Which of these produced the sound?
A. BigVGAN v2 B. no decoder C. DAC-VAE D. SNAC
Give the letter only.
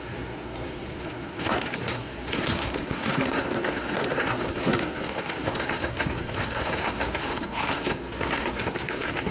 D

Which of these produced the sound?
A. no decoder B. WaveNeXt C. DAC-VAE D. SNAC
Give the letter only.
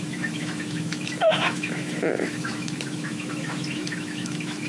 C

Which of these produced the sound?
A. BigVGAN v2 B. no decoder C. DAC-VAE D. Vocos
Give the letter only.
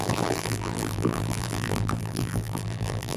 A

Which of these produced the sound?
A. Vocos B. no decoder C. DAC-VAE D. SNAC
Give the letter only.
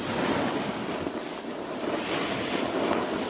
B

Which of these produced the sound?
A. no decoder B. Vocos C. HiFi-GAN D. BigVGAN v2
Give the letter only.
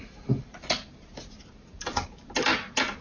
A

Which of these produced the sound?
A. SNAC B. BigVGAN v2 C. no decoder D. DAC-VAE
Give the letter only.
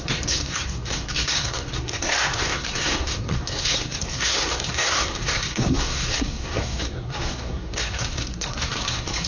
A